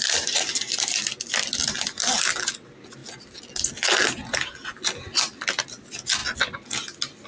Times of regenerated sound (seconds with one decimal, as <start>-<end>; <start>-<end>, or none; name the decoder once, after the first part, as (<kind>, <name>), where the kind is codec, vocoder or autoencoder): none